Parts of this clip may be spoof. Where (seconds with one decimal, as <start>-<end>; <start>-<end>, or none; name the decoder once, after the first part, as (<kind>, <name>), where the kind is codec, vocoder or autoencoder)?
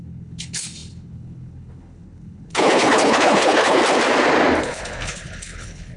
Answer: 0.0-3.8 (codec, HILCodec); 4.6-6.0